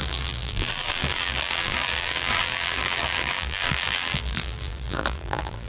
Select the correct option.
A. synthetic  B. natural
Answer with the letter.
A